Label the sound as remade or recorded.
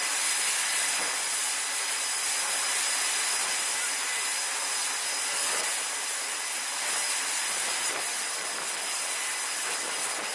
recorded